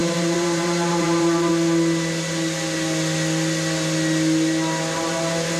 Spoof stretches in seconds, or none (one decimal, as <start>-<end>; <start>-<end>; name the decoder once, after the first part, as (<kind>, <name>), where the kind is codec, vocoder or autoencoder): 0.0-1.5 (vocoder, BigVGAN v2)